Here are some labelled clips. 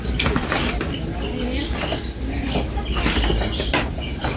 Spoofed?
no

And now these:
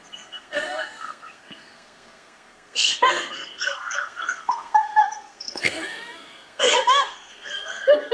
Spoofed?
yes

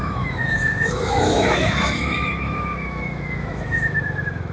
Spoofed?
yes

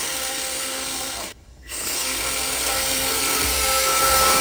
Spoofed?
yes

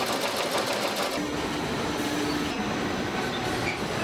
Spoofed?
no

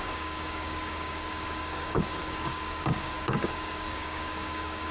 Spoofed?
yes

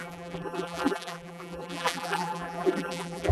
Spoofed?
yes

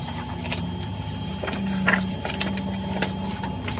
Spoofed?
no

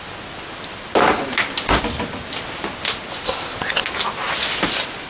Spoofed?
no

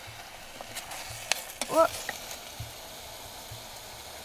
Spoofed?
no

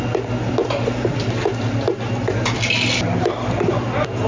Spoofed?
no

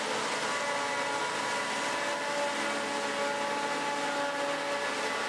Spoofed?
no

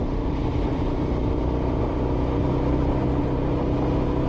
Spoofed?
no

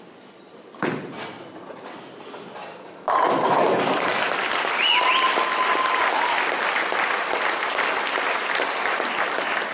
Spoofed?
no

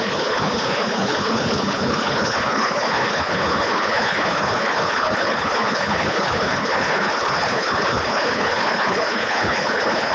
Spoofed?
yes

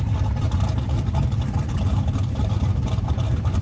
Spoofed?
no